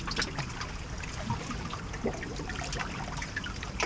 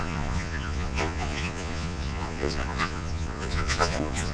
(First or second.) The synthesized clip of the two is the second